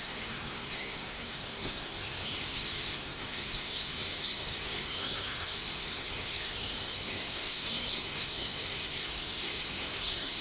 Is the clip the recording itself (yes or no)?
no